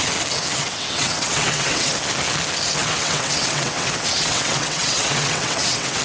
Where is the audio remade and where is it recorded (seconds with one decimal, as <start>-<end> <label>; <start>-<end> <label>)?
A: 0.0-0.6 recorded; 0.6-1.9 remade; 1.9-2.8 recorded; 2.8-6.0 remade